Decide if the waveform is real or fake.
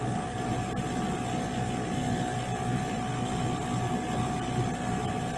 real